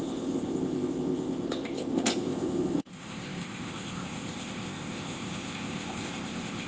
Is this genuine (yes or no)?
no